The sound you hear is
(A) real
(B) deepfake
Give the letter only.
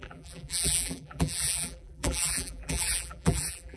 B